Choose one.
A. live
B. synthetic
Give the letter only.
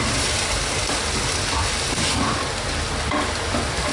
A